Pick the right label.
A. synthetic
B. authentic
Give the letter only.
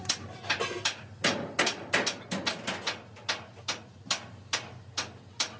B